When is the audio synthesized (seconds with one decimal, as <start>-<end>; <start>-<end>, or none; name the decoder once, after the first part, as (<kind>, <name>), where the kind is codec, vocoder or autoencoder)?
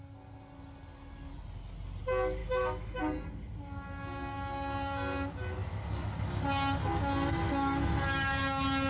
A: 2.4-3.0 (autoencoder, DAC-VAE)